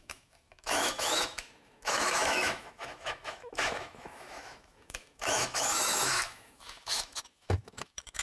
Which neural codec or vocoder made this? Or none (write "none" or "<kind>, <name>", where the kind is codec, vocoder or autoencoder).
autoencoder, DAC-VAE